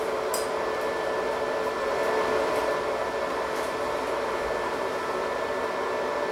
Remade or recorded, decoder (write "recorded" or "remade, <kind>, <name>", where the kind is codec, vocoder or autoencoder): recorded